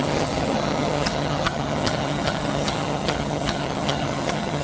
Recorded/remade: remade